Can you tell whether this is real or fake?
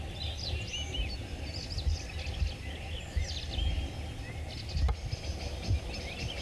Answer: real